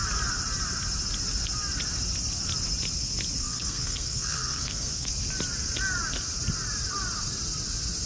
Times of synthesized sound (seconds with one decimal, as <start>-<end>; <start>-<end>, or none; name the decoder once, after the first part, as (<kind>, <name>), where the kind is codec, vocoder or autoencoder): 3.4-5.1 (codec, SNAC)